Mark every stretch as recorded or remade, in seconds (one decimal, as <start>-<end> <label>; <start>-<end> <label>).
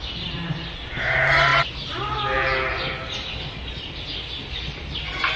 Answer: 0.0-5.4 recorded